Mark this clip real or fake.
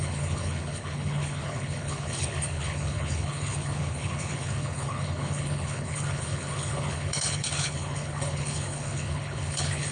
fake